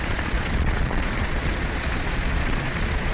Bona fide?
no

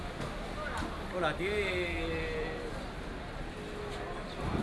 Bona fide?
yes